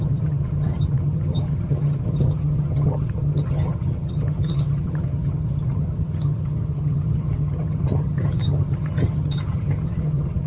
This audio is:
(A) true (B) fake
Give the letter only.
B